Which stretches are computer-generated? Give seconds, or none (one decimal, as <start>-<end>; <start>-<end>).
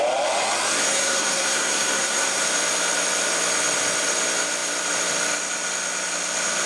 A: 0.9-2.4